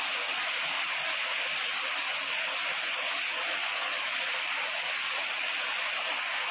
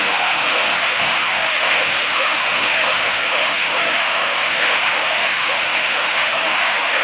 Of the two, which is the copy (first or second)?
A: second